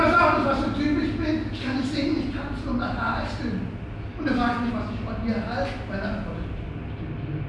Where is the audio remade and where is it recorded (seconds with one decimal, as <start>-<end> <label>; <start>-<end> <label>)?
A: 0.0-4.1 recorded; 4.1-4.7 remade; 4.7-7.5 recorded